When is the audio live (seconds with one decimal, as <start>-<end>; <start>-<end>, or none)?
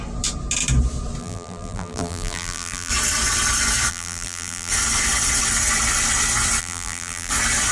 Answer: 0.0-1.2; 2.9-3.9; 4.7-6.6; 7.3-7.7